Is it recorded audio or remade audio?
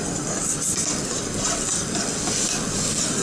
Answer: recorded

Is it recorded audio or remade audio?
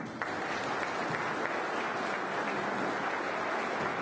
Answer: recorded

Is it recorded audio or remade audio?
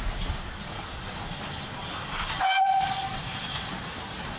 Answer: recorded